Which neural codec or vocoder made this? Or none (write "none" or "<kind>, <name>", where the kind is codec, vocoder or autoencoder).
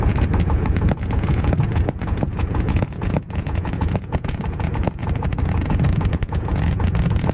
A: vocoder, Vocos